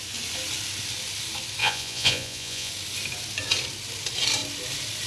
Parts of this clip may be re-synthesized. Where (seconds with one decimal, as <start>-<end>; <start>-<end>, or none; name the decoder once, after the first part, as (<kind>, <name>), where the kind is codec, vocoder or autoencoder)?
1.6-2.7 (vocoder, Vocos)